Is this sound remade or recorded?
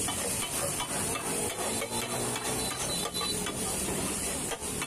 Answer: recorded